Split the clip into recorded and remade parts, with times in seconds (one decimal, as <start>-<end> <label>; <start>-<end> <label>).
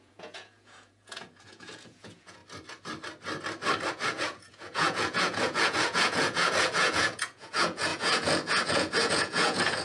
0.0-2.4 remade; 2.4-3.9 recorded; 3.9-9.8 remade